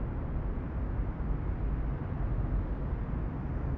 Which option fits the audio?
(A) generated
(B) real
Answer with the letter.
B